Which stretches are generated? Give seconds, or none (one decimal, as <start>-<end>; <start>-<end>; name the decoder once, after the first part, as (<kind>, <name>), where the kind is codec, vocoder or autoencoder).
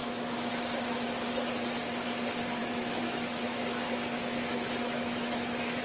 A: 0.0-0.5 (autoencoder, DAC-VAE); 2.6-5.8